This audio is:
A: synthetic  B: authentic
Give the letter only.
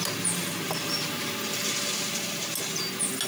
B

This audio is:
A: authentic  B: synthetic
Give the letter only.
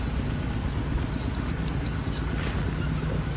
A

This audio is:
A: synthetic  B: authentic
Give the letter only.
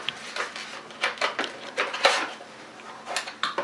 B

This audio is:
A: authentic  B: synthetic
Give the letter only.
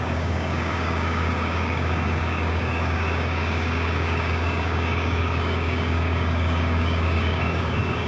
B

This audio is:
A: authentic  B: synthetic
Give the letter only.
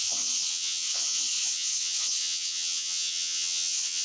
B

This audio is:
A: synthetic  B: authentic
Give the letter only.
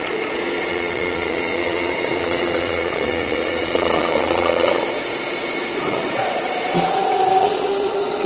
A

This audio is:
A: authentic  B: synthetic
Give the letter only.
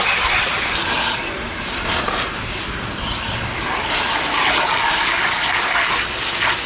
A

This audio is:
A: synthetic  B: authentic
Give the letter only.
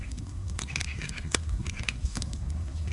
A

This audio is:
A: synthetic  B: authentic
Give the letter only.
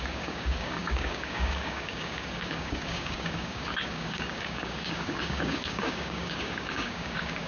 A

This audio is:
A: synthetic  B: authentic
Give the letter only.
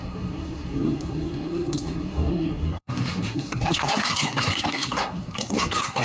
A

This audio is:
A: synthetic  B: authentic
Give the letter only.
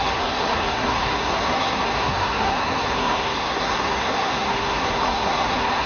A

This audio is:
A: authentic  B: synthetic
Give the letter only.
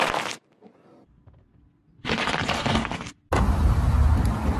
A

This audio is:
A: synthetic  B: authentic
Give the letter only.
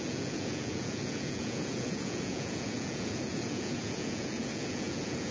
A